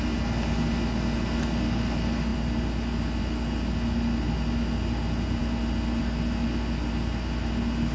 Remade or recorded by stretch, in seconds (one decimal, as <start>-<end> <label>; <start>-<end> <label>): 0.0-7.9 recorded